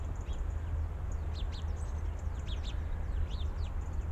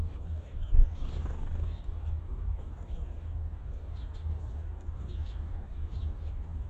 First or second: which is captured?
first